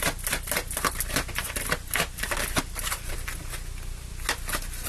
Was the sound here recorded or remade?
recorded